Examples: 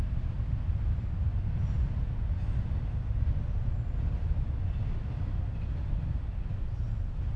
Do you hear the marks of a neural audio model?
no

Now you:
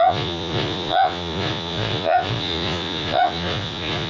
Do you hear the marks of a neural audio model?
yes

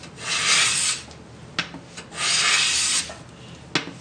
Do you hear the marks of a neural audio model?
no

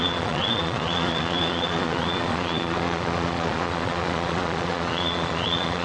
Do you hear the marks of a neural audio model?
yes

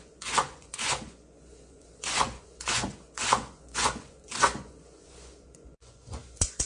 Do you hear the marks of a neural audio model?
yes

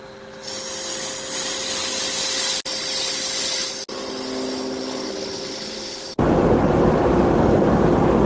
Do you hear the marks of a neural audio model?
no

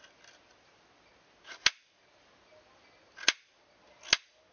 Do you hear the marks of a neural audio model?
no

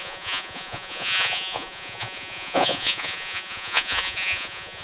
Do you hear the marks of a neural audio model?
yes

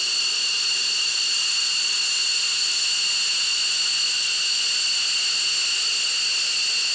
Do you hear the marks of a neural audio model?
no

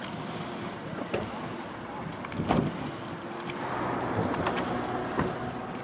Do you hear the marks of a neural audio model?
no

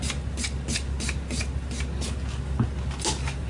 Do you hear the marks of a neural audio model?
no